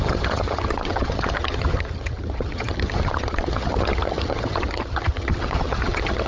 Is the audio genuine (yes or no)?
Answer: no